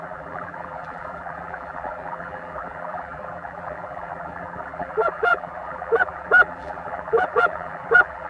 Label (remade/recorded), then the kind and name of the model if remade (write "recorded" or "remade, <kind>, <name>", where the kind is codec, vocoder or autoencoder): remade, vocoder, BigVGAN v2